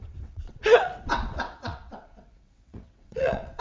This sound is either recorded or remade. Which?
remade